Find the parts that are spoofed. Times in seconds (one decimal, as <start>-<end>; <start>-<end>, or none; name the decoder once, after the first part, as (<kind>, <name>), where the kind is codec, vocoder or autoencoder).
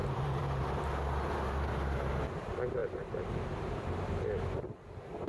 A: 0.0-0.6 (vocoder, BigVGAN v2); 2.8-4.3